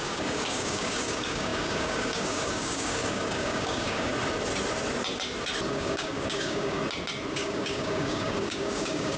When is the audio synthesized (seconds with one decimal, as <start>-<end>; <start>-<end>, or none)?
0.0-4.1; 5.7-6.8; 7.3-9.2